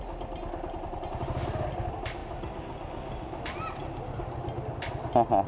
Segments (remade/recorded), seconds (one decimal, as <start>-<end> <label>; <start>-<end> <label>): 0.0-5.5 recorded